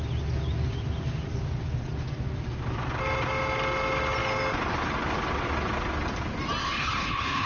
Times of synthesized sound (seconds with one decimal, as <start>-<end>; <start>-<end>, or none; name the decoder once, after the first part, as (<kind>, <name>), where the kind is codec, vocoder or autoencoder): 6.6-7.5 (codec, HILCodec)